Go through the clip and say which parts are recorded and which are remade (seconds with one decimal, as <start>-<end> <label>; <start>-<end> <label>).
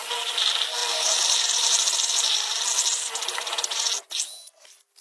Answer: 0.0-0.8 recorded; 0.8-2.6 remade; 2.6-5.0 recorded